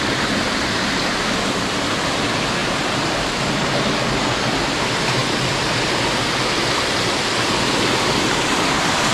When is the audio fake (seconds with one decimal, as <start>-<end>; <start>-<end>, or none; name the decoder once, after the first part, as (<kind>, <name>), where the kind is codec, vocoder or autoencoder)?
2.6-3.4 (vocoder, BigVGAN v2)